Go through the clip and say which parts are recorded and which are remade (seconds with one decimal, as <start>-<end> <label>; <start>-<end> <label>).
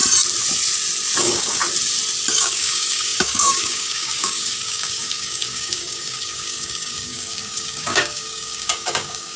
0.0-1.2 recorded; 1.2-1.6 remade; 1.6-2.3 recorded; 2.3-9.4 remade